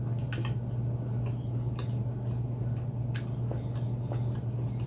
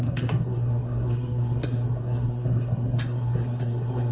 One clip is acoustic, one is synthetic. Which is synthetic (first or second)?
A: second